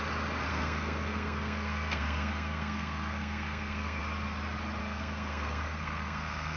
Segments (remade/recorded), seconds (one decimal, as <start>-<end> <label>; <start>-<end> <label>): 0.0-0.5 recorded; 0.5-4.0 remade; 4.0-4.8 recorded; 4.8-6.6 remade